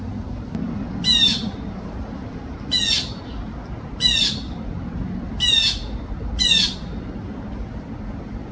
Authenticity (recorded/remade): recorded